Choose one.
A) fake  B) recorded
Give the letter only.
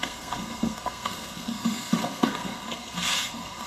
A